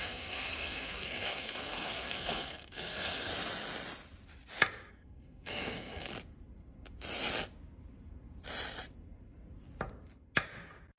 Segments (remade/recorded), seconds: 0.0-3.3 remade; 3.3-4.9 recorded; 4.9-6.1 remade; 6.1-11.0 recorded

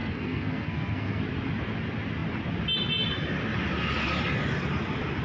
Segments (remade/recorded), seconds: 0.0-1.2 remade; 1.2-5.2 recorded

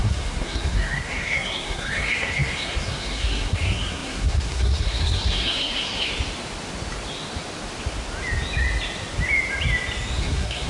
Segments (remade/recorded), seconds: 0.0-6.1 remade; 6.1-10.2 recorded; 10.2-10.7 remade